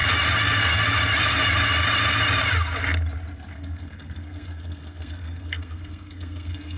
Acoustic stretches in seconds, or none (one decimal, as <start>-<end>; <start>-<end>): 0.0-3.5